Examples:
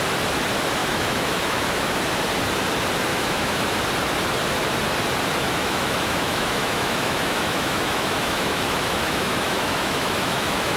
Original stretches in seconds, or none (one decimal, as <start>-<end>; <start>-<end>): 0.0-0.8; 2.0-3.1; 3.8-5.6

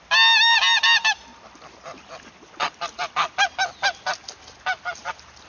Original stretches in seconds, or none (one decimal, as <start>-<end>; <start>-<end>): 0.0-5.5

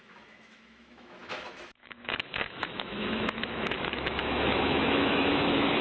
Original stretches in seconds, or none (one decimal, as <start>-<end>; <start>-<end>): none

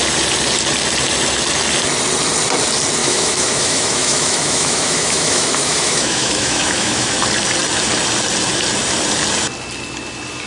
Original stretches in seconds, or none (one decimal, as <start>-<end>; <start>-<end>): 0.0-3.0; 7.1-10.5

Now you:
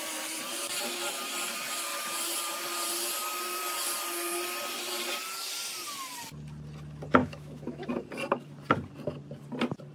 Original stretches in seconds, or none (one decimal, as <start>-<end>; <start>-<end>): 0.0-7.2; 7.9-9.9

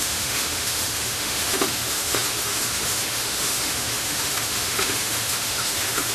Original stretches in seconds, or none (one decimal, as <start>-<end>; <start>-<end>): none

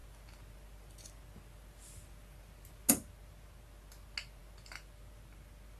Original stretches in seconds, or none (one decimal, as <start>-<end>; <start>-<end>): 0.0-5.8